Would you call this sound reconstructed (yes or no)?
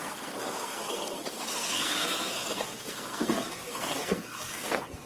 yes